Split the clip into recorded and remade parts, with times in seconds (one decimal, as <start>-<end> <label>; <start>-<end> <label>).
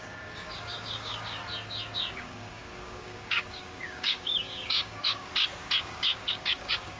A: 0.0-1.4 remade; 1.4-2.1 recorded; 2.1-5.3 remade; 5.3-5.8 recorded; 5.8-7.0 remade